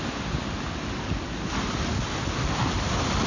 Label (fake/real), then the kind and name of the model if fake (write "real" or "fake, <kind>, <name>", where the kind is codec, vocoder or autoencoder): real